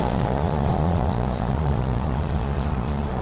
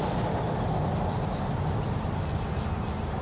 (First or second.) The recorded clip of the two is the second